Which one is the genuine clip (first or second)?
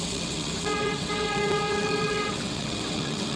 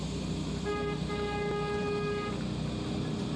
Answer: second